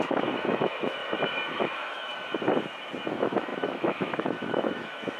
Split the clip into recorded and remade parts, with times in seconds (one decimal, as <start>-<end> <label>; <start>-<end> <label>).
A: 0.0-1.0 remade; 1.0-1.6 recorded; 1.6-2.1 remade; 2.1-3.1 recorded; 3.1-5.2 remade